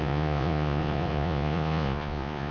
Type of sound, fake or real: fake